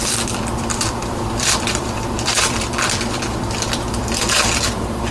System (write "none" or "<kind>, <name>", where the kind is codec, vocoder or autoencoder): vocoder, BigVGAN v2